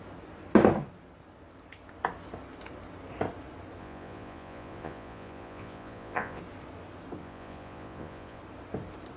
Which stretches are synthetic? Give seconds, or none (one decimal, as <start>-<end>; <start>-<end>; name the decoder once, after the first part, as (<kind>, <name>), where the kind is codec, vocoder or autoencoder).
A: 3.8-6.4 (vocoder, Vocos); 7.2-8.4